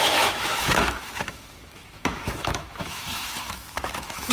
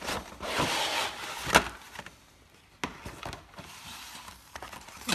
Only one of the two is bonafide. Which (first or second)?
second